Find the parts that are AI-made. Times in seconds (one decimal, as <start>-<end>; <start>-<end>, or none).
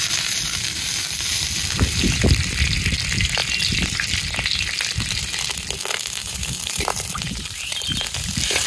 6.2-7.8